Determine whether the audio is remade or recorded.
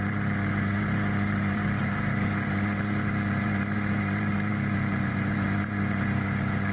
remade